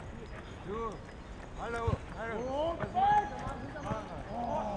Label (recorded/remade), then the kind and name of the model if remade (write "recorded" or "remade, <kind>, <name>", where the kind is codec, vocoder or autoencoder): recorded